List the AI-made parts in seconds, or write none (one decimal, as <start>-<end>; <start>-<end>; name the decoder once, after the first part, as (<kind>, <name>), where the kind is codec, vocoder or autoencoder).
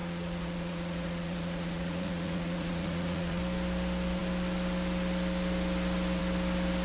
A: 0.0-3.4 (vocoder, Vocos)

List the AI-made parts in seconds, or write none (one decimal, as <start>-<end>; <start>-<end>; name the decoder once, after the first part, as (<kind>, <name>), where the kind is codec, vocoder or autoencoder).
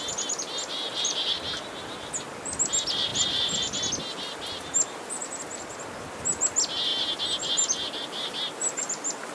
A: none